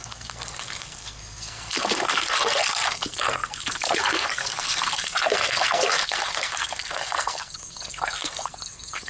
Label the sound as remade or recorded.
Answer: remade